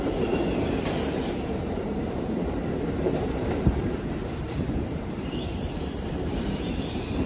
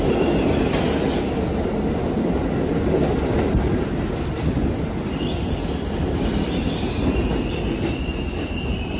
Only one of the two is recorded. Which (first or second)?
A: second